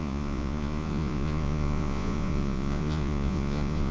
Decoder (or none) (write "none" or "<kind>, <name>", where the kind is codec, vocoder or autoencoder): vocoder, Vocos